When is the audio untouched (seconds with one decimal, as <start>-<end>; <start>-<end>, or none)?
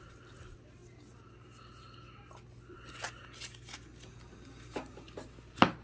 0.0-5.8